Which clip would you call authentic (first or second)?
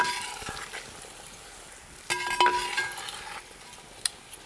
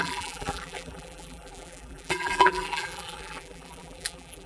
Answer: first